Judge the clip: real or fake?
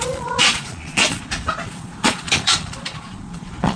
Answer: fake